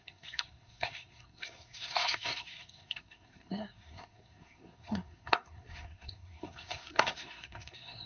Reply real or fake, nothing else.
fake